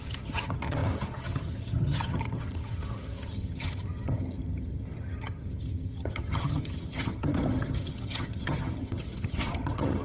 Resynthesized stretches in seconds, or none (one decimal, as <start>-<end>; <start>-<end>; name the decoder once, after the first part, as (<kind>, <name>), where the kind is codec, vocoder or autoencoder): 0.0-10.0 (vocoder, HiFi-GAN)